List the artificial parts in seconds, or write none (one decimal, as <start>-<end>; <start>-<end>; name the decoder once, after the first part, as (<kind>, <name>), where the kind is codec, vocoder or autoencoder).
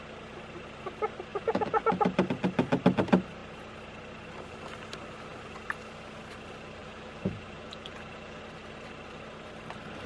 1.3-1.8 (vocoder, BigVGAN v2); 6.8-8.4